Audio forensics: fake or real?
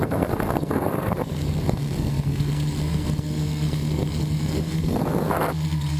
fake